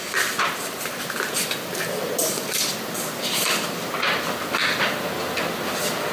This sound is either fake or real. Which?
real